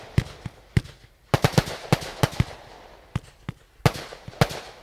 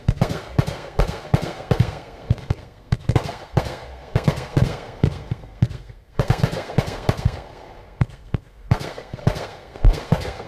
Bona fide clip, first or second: first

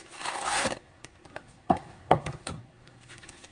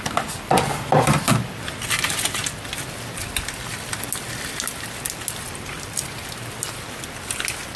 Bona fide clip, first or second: second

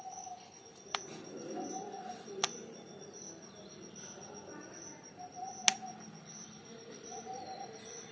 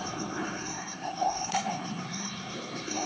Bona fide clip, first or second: first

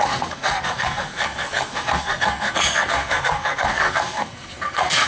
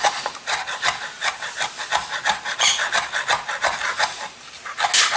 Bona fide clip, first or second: second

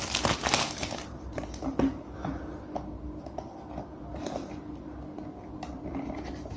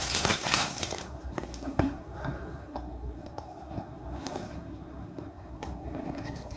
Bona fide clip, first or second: first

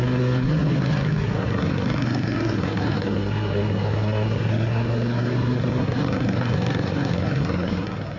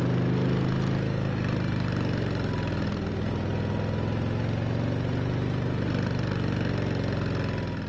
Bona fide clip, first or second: second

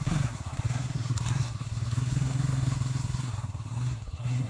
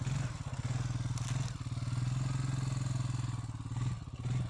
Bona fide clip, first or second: second